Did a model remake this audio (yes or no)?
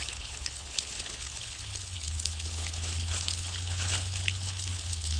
yes